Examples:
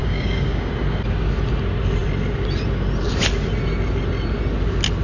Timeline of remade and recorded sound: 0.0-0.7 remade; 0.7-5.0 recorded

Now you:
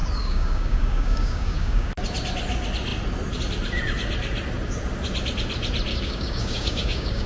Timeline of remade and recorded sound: 0.0-1.9 remade; 1.9-5.9 recorded; 5.9-7.3 remade